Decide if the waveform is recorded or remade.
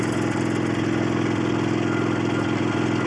recorded